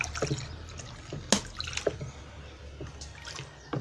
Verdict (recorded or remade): recorded